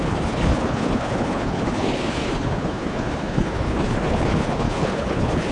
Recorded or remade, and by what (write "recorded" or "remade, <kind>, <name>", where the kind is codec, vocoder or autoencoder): remade, codec, HILCodec